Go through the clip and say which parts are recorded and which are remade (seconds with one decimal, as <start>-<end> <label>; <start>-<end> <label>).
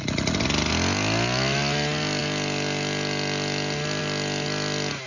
0.0-5.1 recorded